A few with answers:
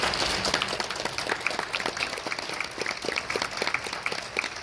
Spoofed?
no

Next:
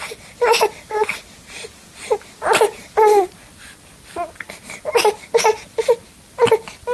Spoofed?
no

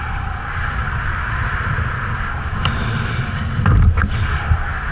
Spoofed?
no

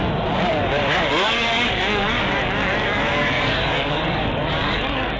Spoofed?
yes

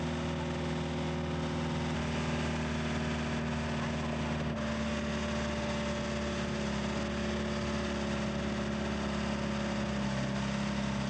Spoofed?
no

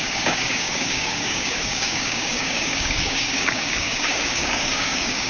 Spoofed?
yes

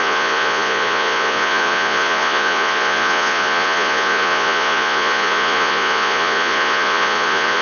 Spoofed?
yes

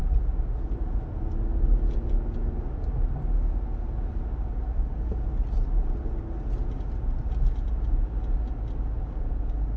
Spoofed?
no